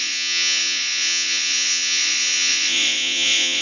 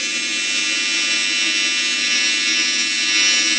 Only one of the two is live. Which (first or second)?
second